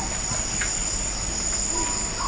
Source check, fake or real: real